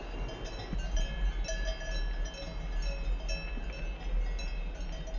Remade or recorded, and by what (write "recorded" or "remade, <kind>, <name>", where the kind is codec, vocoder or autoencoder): recorded